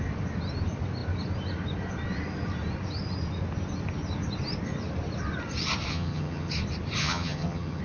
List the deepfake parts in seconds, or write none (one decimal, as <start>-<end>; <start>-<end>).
5.9-6.5; 7.0-7.8